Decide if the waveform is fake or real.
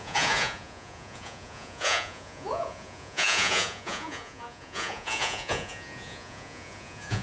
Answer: fake